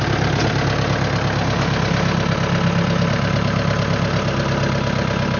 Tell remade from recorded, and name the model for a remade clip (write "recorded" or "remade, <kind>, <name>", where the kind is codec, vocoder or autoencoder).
recorded